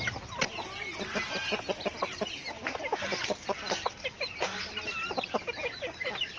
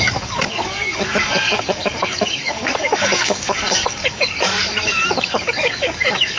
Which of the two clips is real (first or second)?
first